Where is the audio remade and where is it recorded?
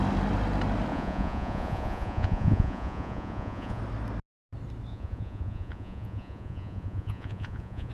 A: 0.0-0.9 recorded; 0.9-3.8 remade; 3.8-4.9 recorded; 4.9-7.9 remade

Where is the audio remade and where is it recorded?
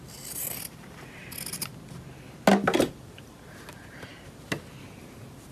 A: 0.0-1.2 remade; 1.2-2.9 recorded; 2.9-4.1 remade; 4.1-5.0 recorded; 5.0-5.5 remade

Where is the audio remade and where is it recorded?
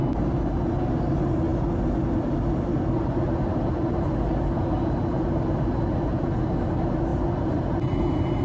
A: 0.0-8.4 recorded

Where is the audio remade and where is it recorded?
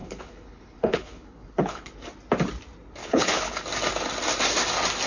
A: 0.0-1.9 remade; 1.9-3.0 recorded; 3.0-3.6 remade; 3.6-5.1 recorded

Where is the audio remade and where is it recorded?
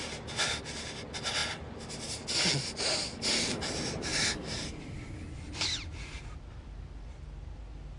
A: 0.0-8.0 recorded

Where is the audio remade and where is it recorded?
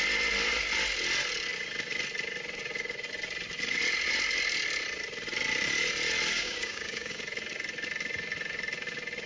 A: 0.0-6.3 recorded; 6.3-7.2 remade; 7.2-9.3 recorded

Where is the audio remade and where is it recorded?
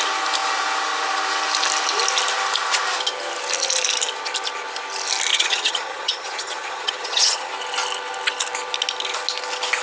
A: 0.0-5.3 recorded; 5.3-7.5 remade; 7.5-9.8 recorded